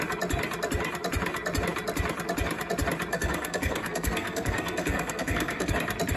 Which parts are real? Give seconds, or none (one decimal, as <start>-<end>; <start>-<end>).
0.0-3.1; 5.7-6.2